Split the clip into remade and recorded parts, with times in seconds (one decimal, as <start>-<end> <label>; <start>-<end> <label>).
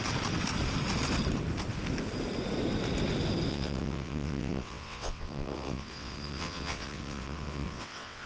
0.0-3.5 recorded; 3.5-8.3 remade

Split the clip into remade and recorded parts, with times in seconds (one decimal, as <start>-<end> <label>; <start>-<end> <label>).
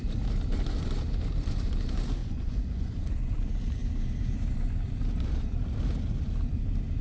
0.0-2.2 recorded; 2.2-3.4 remade; 3.4-7.0 recorded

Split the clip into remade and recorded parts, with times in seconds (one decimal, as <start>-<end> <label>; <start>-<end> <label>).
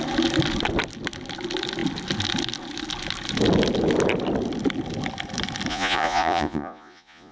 0.0-5.7 recorded; 5.7-7.3 remade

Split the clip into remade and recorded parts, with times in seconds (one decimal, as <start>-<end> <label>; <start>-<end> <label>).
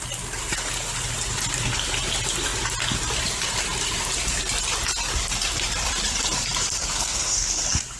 0.0-6.8 recorded; 6.8-7.6 remade; 7.6-8.0 recorded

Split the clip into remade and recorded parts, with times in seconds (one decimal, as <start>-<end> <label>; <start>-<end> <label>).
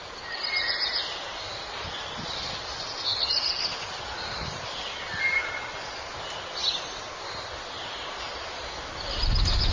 0.0-9.7 recorded